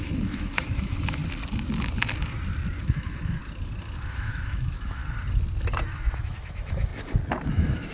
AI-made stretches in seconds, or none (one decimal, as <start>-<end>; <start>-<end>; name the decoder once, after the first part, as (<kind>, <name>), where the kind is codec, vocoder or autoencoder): 0.0-1.2 (autoencoder, DAC-VAE); 2.8-3.4; 4.1-5.0; 6.1-6.9; 7.5-7.9